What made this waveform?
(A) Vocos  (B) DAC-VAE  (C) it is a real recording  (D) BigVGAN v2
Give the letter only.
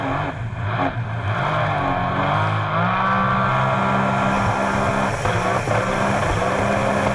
C